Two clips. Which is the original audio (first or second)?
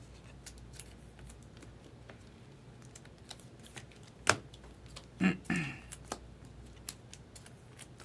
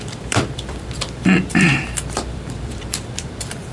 first